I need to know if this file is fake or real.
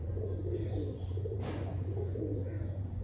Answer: fake